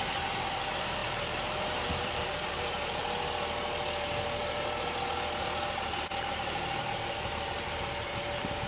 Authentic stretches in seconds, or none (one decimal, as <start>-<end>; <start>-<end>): 3.0-6.2